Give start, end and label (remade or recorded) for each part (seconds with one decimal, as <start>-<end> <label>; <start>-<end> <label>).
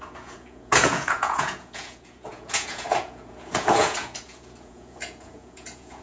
0.0-6.0 remade